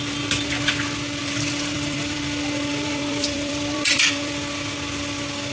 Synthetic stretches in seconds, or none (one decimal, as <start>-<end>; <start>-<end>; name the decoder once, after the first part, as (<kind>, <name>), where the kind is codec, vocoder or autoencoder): 1.2-4.4 (vocoder, BigVGAN v2)